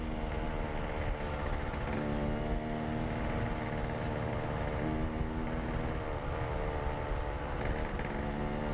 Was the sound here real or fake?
real